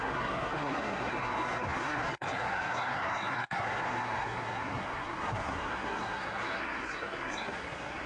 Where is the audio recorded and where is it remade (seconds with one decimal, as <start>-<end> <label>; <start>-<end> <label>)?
0.0-8.1 remade